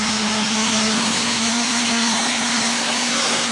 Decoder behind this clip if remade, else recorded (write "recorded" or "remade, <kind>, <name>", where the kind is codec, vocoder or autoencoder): remade, codec, SNAC